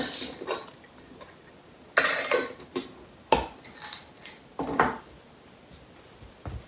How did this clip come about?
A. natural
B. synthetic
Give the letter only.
A